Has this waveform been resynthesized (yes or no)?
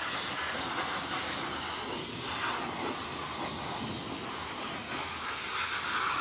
no